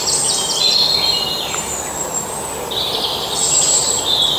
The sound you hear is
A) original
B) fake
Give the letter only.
A